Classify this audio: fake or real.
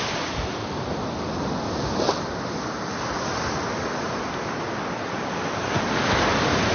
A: real